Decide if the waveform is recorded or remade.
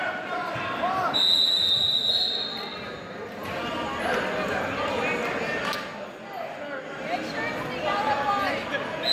recorded